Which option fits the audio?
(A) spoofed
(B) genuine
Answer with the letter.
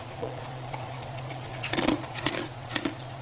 A